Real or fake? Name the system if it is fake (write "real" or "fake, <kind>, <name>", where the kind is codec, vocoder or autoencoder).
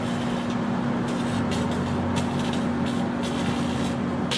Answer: real